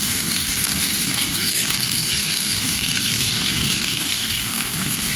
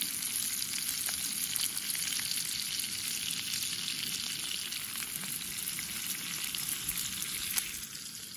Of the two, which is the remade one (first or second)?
first